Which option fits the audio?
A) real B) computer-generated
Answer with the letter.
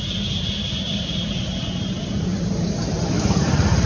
A